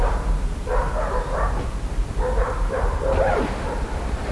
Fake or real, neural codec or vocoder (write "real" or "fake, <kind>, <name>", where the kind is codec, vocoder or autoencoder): fake, vocoder, BigVGAN v2